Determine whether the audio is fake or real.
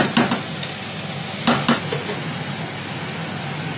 real